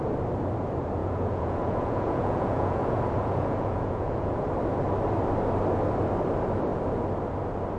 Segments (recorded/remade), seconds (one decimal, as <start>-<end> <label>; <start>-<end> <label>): 0.0-1.0 recorded; 1.0-4.5 remade; 4.5-7.8 recorded